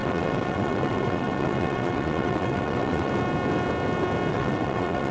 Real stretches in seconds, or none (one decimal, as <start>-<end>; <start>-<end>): 3.1-4.3